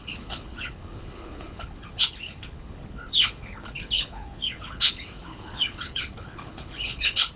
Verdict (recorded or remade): remade